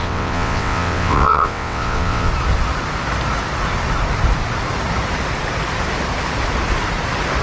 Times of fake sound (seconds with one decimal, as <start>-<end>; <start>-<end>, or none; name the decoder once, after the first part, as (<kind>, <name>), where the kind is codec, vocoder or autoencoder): 0.0-2.3 (vocoder, WaveNeXt)